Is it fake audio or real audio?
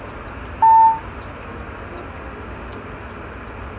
real